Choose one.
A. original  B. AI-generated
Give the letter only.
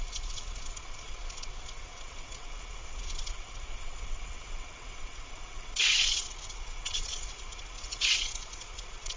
B